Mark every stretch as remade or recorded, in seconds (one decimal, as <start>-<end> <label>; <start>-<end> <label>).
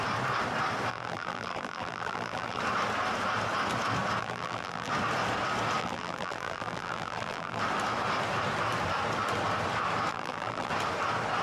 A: 0.0-0.9 recorded; 0.9-2.6 remade; 2.6-4.2 recorded; 4.2-4.9 remade; 4.9-5.8 recorded; 5.8-7.6 remade; 7.6-10.1 recorded; 10.1-10.7 remade; 10.7-11.4 recorded